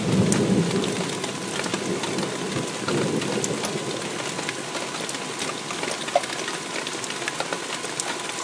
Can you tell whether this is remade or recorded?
recorded